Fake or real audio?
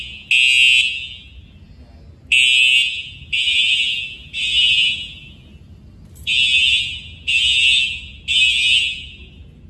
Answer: real